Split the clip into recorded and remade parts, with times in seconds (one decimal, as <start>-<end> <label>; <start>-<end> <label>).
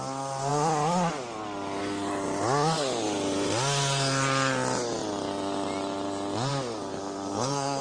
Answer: 0.0-6.9 recorded; 6.9-7.8 remade